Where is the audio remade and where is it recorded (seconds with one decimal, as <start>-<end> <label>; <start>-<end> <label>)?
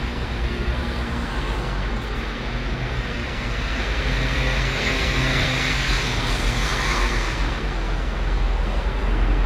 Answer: 0.0-9.5 remade